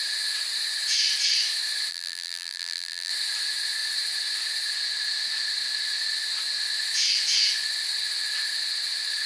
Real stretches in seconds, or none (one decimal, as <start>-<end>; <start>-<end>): 0.0-1.9; 3.1-9.3